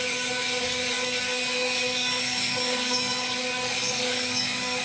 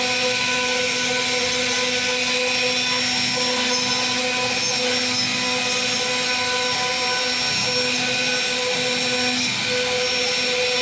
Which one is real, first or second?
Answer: second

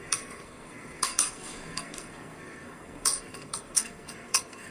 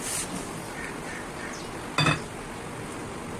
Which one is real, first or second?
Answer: second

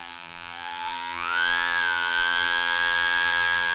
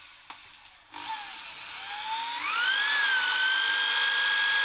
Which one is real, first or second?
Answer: second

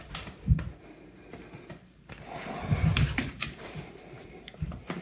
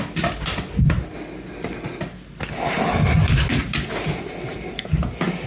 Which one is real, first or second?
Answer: second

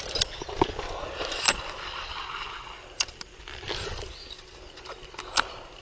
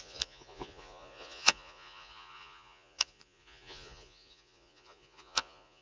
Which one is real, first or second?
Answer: first